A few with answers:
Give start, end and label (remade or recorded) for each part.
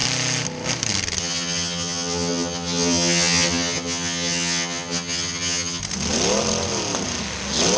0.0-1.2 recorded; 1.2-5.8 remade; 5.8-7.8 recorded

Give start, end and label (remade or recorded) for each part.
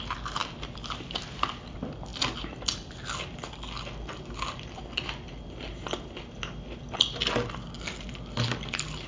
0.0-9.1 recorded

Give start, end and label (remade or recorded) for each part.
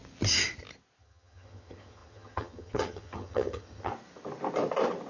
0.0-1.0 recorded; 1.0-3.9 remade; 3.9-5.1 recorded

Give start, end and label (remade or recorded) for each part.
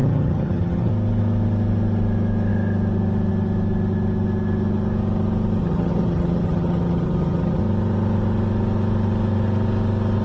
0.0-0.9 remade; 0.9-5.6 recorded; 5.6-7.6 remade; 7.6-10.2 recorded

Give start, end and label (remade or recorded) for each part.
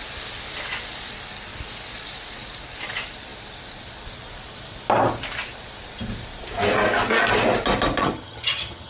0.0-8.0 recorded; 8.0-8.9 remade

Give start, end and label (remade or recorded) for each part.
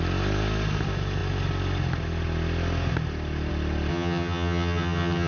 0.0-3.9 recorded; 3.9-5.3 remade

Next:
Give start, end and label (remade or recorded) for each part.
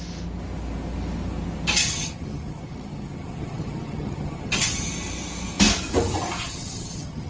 0.0-1.8 recorded; 1.8-4.9 remade; 4.9-6.4 recorded; 6.4-7.3 remade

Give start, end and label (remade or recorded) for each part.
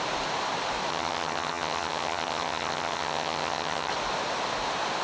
0.0-0.9 recorded; 0.9-3.9 remade; 3.9-5.0 recorded